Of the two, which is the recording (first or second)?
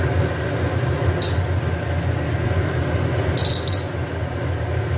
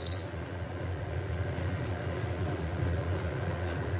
first